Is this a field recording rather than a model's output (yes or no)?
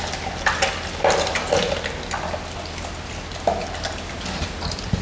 yes